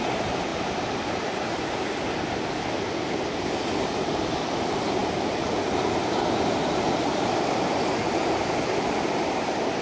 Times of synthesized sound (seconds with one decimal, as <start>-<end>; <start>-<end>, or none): 0.5-1.4